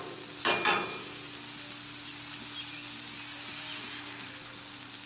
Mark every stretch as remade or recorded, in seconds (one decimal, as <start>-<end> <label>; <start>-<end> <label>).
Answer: 0.0-5.1 recorded